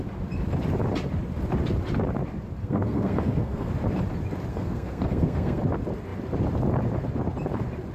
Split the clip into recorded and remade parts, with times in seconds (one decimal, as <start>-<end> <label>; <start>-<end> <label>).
0.0-2.6 recorded; 2.6-3.7 remade; 3.7-4.5 recorded; 4.5-5.6 remade; 5.6-7.9 recorded